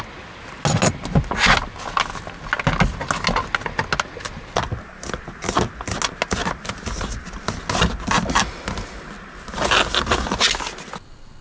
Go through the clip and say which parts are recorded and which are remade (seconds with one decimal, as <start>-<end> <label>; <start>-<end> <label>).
0.0-11.4 recorded